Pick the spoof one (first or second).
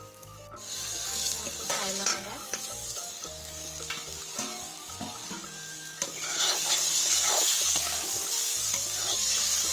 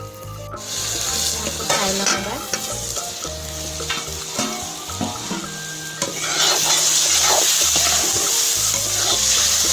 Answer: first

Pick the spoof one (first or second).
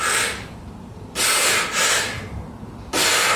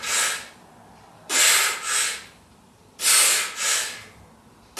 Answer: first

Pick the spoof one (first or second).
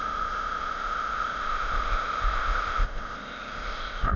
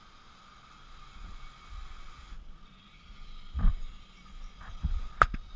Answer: first